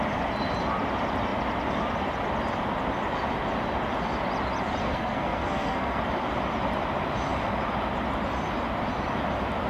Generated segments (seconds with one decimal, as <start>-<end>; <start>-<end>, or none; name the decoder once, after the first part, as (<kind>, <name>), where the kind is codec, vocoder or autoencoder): 4.8-6.0 (codec, SNAC)